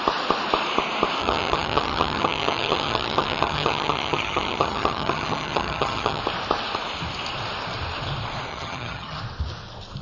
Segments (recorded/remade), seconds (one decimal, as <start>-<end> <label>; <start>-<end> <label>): 0.0-1.2 recorded; 1.2-6.2 remade; 6.2-8.5 recorded; 8.5-9.2 remade; 9.2-10.0 recorded